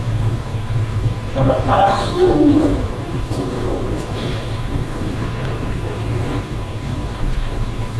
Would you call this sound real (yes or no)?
no